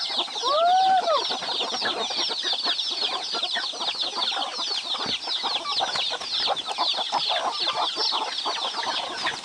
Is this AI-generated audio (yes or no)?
no